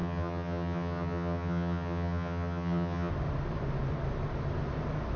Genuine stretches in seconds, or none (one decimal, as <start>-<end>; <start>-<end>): 3.1-5.2